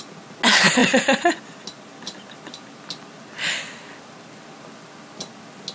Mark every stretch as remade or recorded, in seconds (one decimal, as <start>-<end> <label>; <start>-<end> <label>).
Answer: 0.0-5.7 recorded